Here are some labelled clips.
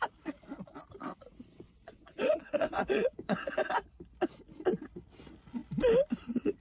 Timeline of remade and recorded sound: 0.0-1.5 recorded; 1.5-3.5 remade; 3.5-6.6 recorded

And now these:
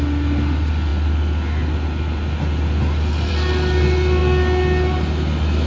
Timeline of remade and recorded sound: 0.0-5.7 recorded